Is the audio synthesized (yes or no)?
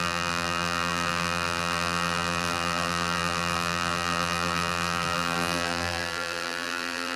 yes